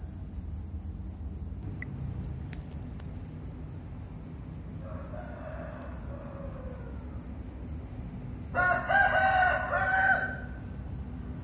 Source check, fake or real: real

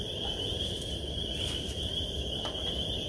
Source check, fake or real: real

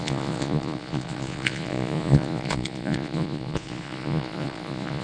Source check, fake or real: fake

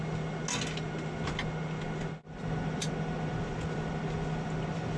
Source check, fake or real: real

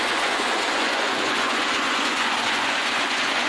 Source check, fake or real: fake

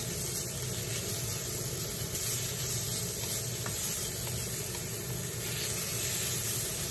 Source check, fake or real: real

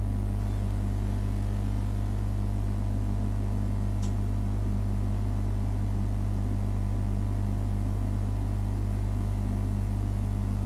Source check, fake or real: real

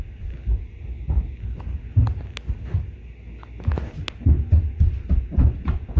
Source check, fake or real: real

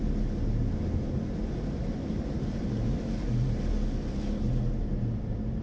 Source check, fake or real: real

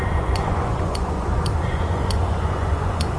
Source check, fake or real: fake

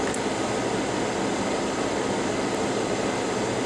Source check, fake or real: real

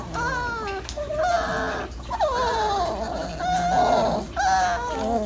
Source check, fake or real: real